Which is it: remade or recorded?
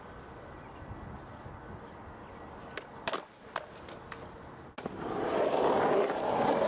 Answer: recorded